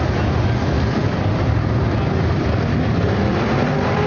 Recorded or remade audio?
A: remade